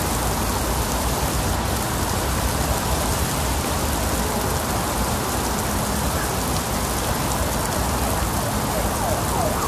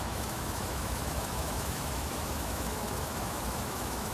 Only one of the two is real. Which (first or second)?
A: first